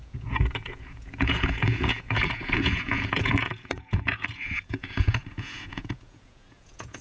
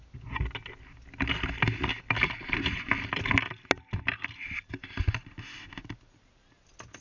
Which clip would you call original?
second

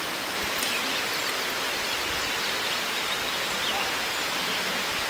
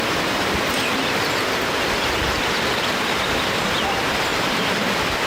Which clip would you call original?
first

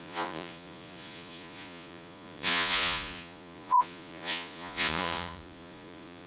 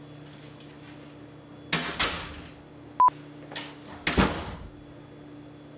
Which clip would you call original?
second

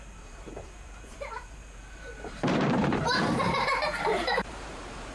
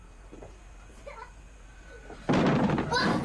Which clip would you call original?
second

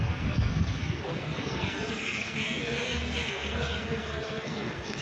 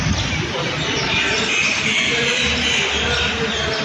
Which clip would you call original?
second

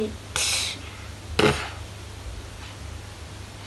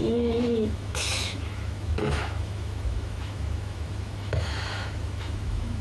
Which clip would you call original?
first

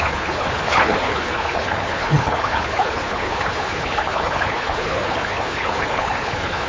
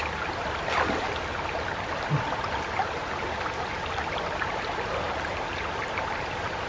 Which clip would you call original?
second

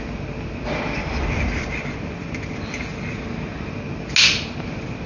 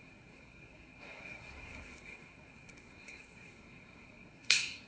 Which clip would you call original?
first